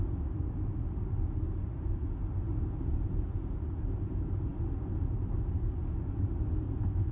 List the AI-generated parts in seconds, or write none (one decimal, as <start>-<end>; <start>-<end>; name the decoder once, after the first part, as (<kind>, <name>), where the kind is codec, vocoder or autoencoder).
none